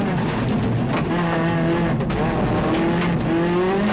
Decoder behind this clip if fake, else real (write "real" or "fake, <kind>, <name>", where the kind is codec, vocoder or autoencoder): real